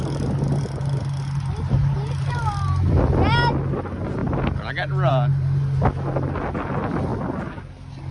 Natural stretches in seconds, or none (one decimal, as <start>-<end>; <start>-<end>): 0.0-8.1